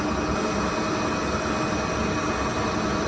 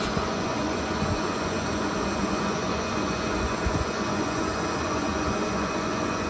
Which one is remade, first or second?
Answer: second